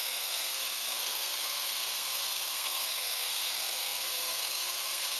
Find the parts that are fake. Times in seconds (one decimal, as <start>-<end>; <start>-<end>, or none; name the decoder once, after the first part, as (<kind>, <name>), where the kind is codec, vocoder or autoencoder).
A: 0.0-5.2 (codec, SNAC)